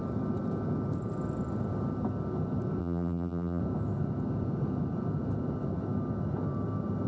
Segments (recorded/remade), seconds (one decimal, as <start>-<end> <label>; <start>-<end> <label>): 0.0-2.8 recorded; 2.8-3.6 remade; 3.6-7.1 recorded